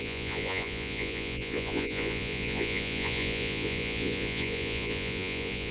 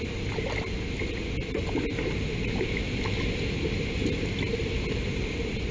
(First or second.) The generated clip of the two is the first